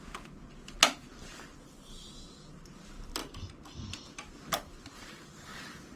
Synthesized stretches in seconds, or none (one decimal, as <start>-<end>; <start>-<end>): none